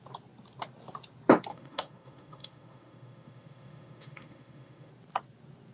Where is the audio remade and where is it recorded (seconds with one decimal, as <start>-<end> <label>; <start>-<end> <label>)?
0.0-1.5 recorded; 1.5-4.9 remade; 4.9-5.7 recorded